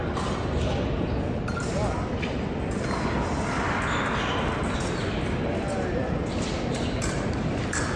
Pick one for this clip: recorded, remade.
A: recorded